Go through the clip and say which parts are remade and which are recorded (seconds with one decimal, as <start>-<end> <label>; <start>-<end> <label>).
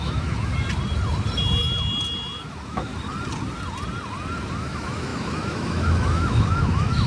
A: 0.0-0.5 remade; 0.5-2.4 recorded; 2.4-2.9 remade; 2.9-4.5 recorded; 4.5-7.1 remade